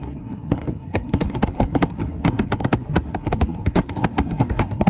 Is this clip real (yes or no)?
no